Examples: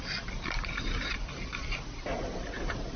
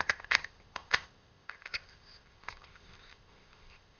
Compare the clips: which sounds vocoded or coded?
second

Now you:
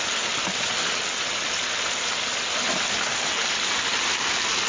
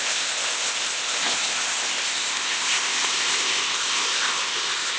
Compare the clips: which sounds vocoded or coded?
second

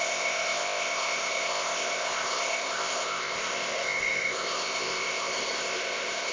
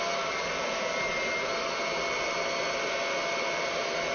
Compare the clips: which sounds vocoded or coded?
first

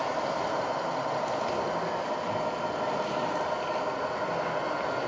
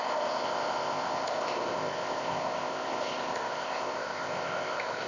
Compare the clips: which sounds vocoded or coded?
second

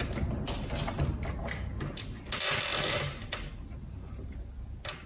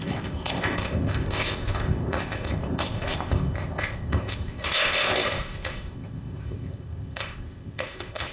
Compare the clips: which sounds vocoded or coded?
second